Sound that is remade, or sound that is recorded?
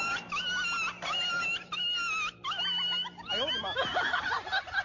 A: recorded